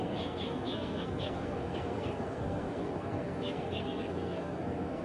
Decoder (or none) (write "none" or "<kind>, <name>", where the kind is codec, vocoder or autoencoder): codec, SNAC